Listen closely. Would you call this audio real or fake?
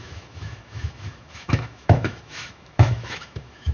fake